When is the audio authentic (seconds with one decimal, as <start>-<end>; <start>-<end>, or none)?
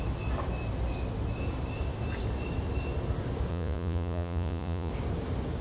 0.0-3.5; 4.9-5.6